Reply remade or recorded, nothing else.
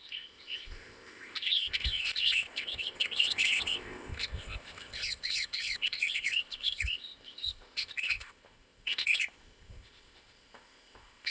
remade